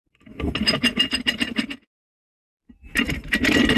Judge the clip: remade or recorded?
recorded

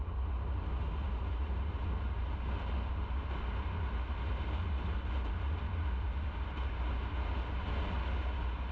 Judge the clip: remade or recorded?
recorded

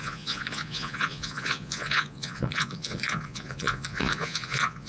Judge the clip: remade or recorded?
remade